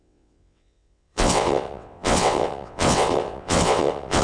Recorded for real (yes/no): no